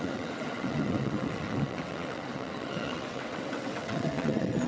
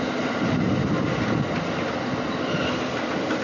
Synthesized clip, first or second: first